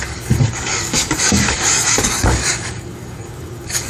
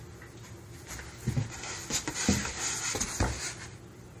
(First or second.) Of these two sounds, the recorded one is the second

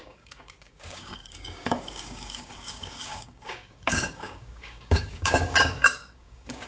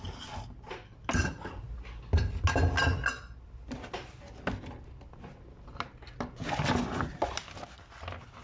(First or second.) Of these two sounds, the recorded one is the second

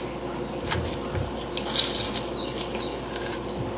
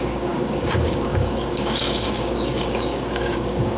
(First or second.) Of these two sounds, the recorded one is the first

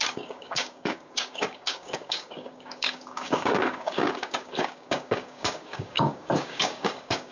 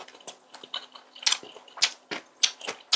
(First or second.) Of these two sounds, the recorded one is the second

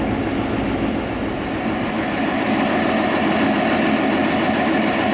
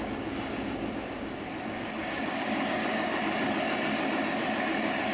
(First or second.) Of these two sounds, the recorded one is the first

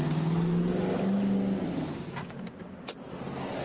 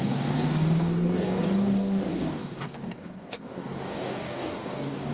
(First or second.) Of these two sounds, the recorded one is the first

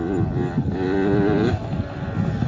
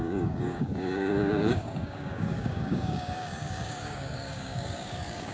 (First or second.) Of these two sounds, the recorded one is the first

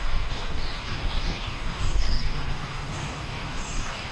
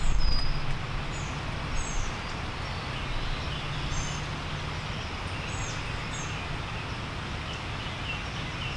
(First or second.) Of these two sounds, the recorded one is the second